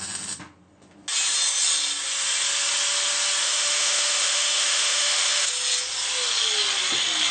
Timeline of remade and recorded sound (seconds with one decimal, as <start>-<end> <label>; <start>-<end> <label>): 0.0-3.4 recorded; 3.4-5.5 remade; 5.5-7.3 recorded